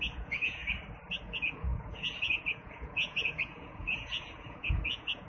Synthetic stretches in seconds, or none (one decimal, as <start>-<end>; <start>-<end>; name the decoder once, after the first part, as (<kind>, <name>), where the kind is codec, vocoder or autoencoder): 0.0-0.6 (vocoder, Vocos); 1.2-5.3